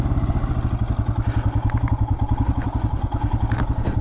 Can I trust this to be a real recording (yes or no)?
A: yes